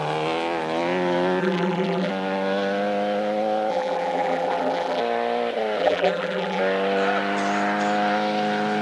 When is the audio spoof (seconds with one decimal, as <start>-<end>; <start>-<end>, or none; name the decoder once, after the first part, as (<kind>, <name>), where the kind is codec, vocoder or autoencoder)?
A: 1.4-2.1 (vocoder, BigVGAN v2); 3.7-5.0; 5.8-6.6